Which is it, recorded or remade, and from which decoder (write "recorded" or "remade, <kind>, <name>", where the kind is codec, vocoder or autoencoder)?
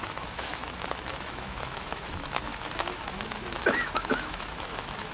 remade, autoencoder, DAC-VAE